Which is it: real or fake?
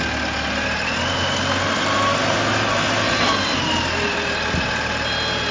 real